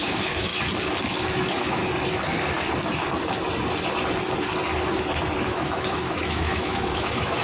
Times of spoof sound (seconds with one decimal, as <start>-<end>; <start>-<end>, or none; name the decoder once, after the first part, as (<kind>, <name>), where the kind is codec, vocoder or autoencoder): 0.0-0.5 (autoencoder, DAC-VAE); 1.0-1.8; 5.4-7.4